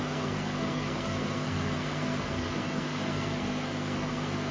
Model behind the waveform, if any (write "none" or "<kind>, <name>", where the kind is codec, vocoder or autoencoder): codec, SNAC